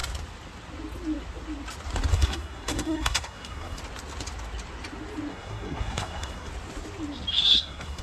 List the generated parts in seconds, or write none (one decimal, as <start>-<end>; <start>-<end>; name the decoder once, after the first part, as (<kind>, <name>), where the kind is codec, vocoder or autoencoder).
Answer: 2.1-3.8 (codec, SNAC); 5.3-6.5; 7.3-8.0